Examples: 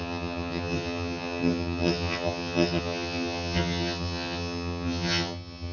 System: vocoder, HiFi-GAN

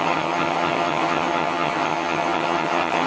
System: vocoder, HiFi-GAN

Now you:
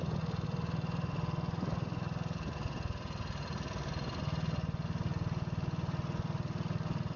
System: none